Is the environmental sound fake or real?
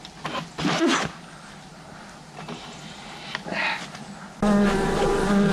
real